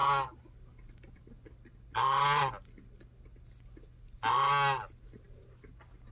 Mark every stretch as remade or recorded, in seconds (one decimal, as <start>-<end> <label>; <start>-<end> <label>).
0.0-6.1 recorded